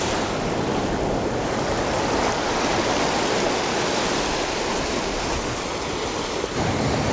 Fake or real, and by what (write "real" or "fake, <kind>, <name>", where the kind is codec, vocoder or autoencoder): real